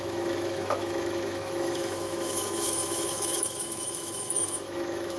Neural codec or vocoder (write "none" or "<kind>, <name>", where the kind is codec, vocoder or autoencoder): autoencoder, DAC-VAE